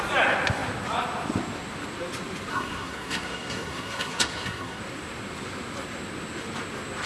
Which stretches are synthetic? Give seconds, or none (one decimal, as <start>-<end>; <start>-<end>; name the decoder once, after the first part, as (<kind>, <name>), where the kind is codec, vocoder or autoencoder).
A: 2.5-4.8 (codec, SNAC)